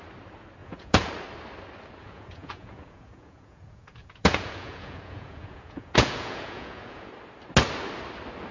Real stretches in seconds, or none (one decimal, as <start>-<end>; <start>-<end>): 0.0-0.6; 1.1-2.0; 7.1-8.5